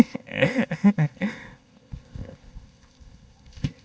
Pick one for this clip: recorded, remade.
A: remade